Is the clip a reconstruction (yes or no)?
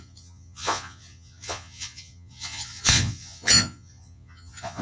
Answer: yes